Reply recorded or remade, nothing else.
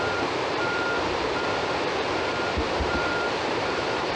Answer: remade